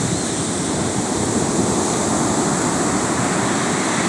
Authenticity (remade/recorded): recorded